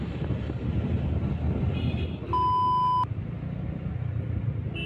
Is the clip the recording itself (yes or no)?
yes